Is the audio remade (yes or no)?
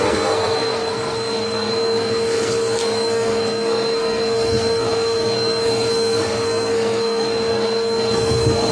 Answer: yes